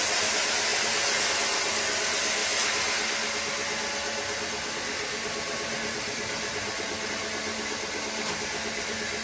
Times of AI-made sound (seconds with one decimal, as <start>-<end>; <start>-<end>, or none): none